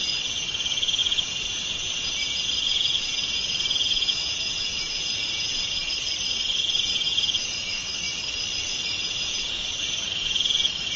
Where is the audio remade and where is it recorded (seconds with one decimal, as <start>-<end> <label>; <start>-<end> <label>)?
0.0-5.8 remade; 5.8-6.8 recorded; 6.8-7.8 remade; 7.8-8.6 recorded; 8.6-11.0 remade